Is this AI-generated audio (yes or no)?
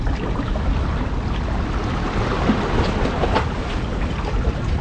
no